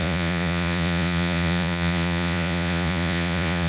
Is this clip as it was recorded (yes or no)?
no